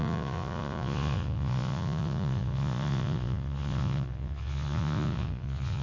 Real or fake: fake